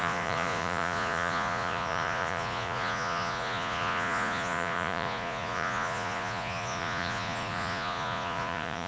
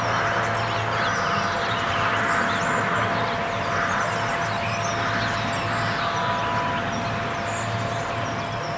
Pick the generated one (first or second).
first